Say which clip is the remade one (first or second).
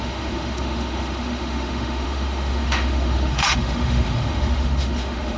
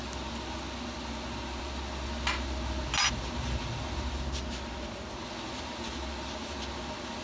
first